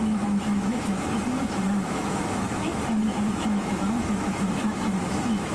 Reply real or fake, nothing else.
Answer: fake